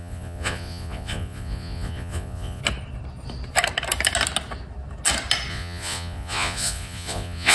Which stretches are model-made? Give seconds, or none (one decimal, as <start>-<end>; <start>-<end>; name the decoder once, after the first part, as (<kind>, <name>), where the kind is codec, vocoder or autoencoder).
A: 0.0-2.6 (vocoder, Vocos); 5.5-7.5